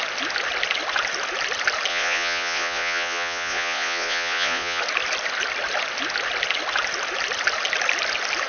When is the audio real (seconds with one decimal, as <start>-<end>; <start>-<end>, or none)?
0.0-1.9; 4.8-8.5

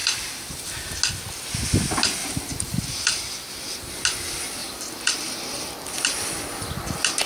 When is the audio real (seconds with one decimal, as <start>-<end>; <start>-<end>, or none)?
1.0-2.2; 3.2-4.6; 5.7-7.3

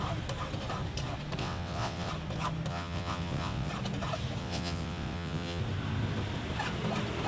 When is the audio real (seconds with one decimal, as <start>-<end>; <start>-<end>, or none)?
0.0-1.4; 2.1-2.7; 3.7-4.4; 5.6-7.3

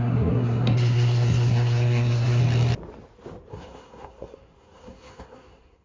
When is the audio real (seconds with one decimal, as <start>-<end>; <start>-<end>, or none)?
2.4-3.5

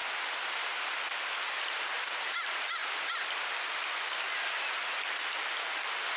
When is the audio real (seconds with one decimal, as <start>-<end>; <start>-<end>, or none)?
1.0-6.2

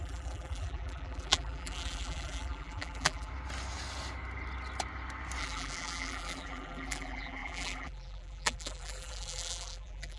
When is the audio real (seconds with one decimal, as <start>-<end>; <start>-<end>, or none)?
3.3-5.4

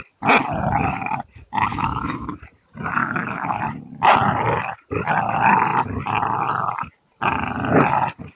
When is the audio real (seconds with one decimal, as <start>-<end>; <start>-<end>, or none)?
0.0-1.7; 2.4-3.0; 3.6-8.4

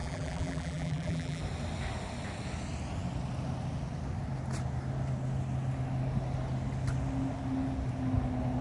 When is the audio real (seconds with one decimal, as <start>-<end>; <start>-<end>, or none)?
1.4-8.6